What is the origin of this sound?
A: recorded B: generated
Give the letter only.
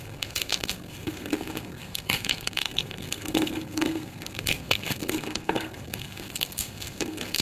B